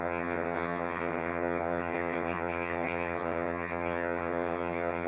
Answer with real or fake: fake